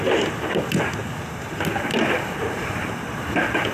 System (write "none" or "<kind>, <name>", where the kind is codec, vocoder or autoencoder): none